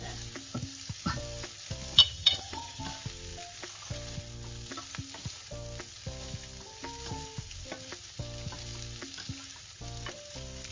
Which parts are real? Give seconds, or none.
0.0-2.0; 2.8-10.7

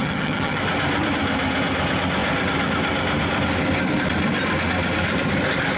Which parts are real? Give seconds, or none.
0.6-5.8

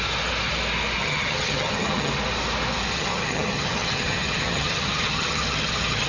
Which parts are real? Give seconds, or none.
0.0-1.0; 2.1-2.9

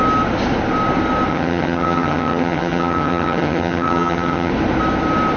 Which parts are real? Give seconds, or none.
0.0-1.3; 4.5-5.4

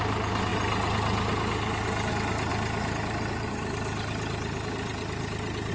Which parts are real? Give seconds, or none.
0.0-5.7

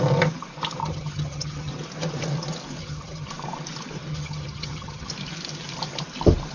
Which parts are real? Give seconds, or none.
0.0-0.8; 1.7-2.8; 3.3-4.1; 5.1-6.5